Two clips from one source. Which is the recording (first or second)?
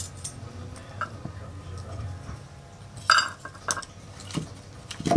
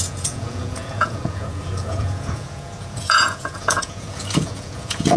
first